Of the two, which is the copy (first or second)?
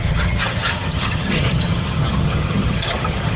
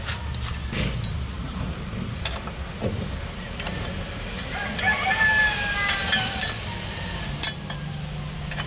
first